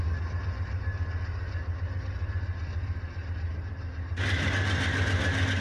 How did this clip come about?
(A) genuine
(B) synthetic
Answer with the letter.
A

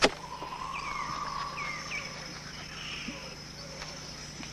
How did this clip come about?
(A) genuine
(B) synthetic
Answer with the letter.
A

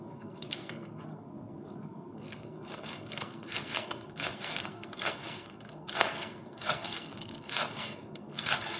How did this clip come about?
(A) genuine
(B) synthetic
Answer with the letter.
B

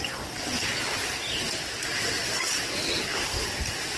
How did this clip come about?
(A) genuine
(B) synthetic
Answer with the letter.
A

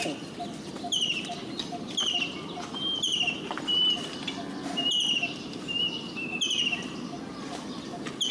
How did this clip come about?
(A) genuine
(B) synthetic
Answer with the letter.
A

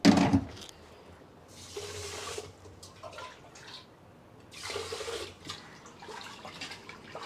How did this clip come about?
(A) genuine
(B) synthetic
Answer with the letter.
A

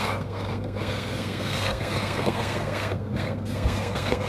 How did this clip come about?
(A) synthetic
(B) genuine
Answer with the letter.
A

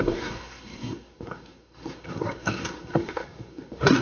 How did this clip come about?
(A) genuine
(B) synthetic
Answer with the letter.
B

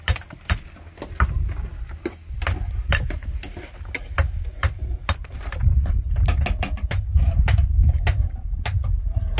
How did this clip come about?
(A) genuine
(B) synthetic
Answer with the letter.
A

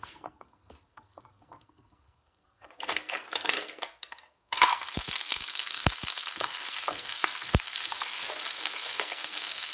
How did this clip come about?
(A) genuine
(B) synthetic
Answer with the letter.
B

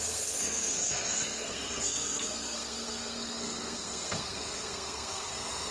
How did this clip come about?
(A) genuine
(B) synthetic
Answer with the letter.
B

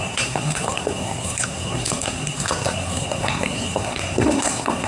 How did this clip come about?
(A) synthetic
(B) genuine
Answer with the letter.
A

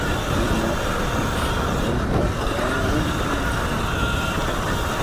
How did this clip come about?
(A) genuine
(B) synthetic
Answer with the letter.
A